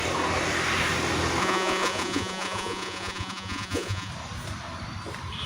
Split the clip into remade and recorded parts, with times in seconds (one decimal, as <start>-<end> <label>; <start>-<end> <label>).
0.0-1.4 recorded; 1.4-4.1 remade; 4.1-5.5 recorded